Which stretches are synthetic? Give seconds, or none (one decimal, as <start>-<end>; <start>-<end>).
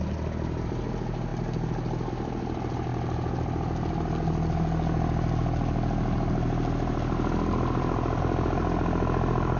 none